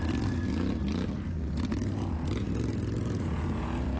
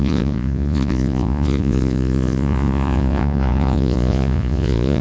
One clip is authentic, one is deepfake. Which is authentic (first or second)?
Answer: first